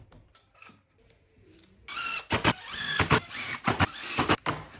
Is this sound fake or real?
real